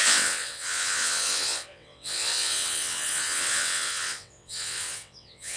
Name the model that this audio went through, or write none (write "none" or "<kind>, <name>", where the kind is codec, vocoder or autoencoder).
vocoder, WaveNeXt